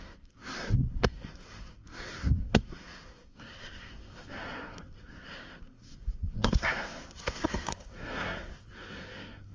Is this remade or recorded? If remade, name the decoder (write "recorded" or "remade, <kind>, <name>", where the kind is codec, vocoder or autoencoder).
remade, codec, SNAC